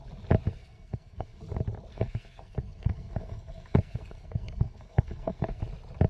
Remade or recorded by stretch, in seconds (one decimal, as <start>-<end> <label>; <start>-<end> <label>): 0.0-0.5 recorded; 0.5-1.4 remade; 1.4-1.9 recorded; 1.9-5.6 remade; 5.6-6.1 recorded